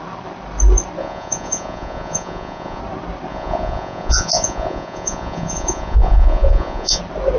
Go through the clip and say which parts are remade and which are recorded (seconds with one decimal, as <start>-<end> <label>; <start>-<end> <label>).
0.0-1.0 recorded; 1.0-2.8 remade; 2.8-3.3 recorded; 3.3-7.0 remade; 7.0-7.4 recorded